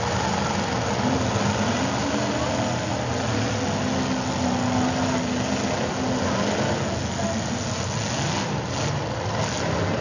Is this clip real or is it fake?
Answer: real